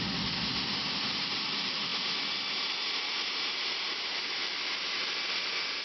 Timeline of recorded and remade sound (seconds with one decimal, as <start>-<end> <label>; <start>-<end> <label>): 0.0-1.9 remade; 1.9-3.2 recorded; 3.2-4.4 remade; 4.4-5.3 recorded; 5.3-5.8 remade